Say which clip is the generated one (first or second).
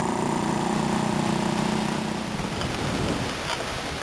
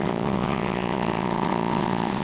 second